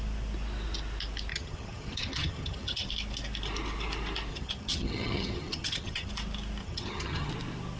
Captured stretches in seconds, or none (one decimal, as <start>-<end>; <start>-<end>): 0.0-1.3; 2.9-4.3; 6.1-6.6; 7.3-7.8